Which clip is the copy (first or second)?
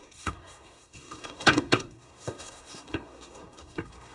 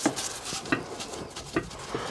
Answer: first